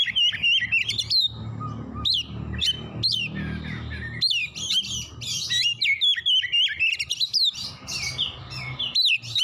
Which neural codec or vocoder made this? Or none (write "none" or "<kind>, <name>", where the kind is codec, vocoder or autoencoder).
none